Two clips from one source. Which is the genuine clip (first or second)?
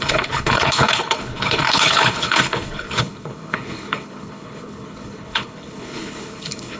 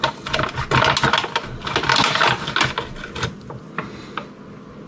second